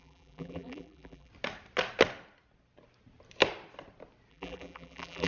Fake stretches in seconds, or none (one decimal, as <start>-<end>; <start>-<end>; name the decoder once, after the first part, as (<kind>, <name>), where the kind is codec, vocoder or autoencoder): 0.0-1.3 (vocoder, BigVGAN v2); 4.3-5.3